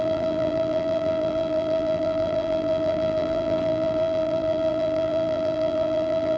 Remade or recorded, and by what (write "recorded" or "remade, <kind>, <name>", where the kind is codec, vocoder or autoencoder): remade, vocoder, BigVGAN v2